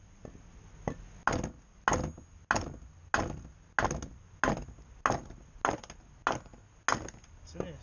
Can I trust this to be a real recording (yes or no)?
yes